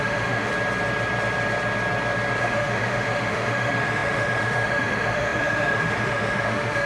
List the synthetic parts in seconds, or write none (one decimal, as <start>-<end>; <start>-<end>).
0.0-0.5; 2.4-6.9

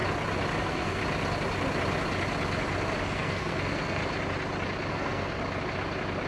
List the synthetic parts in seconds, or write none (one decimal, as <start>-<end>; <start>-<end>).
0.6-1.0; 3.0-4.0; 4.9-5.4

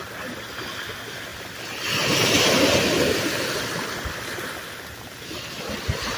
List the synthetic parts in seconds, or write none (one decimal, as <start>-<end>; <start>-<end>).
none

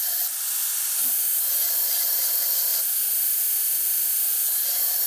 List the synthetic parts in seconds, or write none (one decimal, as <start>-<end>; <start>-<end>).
none

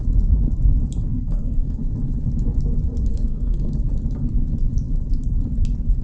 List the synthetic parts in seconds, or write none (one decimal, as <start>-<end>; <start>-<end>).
1.1-1.8; 3.1-3.7

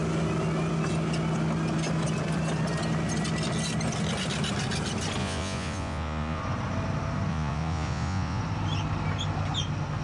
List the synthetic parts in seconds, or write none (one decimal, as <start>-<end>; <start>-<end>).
5.2-6.4; 7.3-8.4

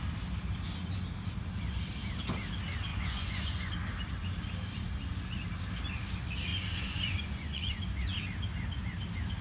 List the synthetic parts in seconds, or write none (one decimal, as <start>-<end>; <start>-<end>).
2.9-3.7; 6.5-7.8